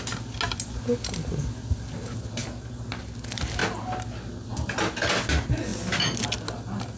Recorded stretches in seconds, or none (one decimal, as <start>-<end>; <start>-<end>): 0.0-7.0